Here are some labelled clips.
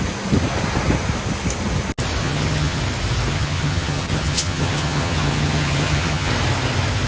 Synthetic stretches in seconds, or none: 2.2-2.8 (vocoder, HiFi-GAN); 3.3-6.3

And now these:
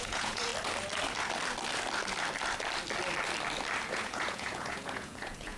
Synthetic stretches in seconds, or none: 0.0-0.5 (vocoder, Vocos); 3.9-5.6

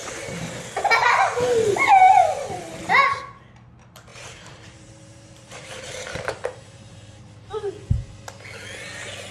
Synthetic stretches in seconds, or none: 4.1-7.7 (vocoder, BigVGAN v2)

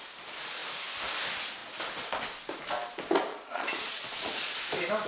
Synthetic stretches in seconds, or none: 3.3-4.6 (vocoder, Vocos)

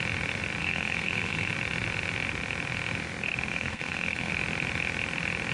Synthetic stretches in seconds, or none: 0.6-1.5 (codec, SNAC); 3.5-4.3

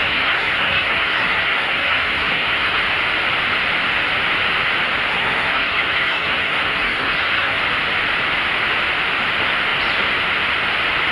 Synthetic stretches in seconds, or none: 0.0-2.8 (codec, SNAC); 5.1-7.6

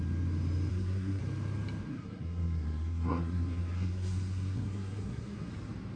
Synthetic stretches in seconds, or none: 0.7-1.2 (codec, SNAC); 1.9-5.5

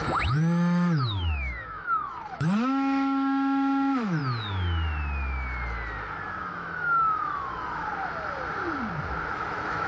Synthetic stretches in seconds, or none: 0.0-4.2 (autoencoder, DAC-VAE); 6.4-7.9; 9.3-9.9